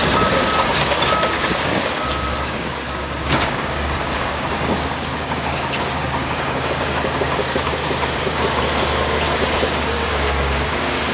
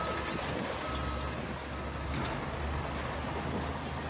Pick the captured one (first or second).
second